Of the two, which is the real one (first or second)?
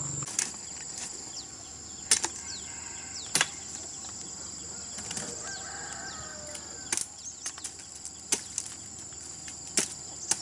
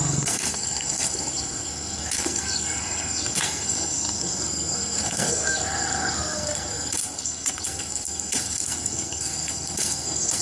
first